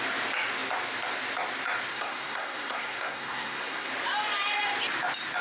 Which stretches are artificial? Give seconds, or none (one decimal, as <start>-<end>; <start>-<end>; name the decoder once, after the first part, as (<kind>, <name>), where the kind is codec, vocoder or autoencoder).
1.9-3.9 (codec, SNAC)

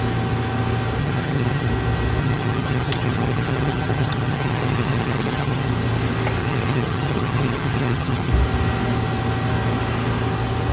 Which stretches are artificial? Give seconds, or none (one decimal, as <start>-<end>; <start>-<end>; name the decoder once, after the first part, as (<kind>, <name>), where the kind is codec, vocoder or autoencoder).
1.0-1.7 (vocoder, HiFi-GAN); 2.2-5.7; 6.4-8.3

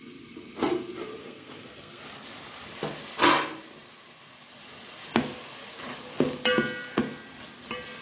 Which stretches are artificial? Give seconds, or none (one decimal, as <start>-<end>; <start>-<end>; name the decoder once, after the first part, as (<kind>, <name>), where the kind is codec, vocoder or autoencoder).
1.2-2.0 (codec, SNAC)

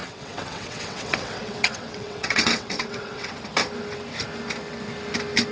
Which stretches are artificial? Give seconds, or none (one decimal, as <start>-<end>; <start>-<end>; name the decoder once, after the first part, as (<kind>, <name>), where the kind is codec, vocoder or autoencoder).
0.0-3.3 (vocoder, WaveNeXt)